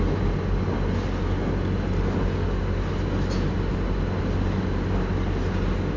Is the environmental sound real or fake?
real